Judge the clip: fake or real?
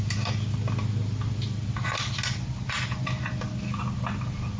real